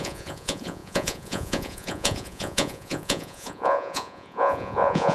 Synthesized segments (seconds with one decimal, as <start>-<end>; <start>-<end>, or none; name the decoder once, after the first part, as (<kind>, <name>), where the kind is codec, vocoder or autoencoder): 0.0-5.1 (vocoder, Vocos)